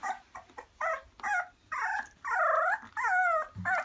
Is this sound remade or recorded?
recorded